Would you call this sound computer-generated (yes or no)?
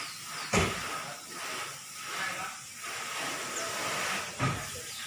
no